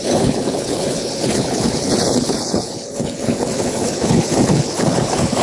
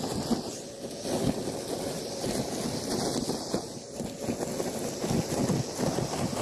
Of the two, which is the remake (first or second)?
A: first